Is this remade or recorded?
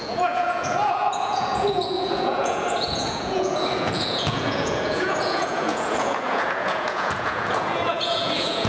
remade